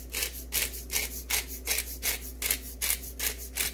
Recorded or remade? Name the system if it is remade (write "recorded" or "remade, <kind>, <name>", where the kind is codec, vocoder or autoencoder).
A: recorded